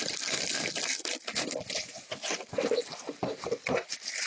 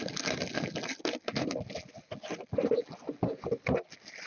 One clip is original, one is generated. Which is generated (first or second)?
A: first